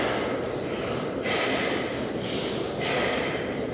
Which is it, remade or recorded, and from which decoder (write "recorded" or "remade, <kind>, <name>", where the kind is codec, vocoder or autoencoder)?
recorded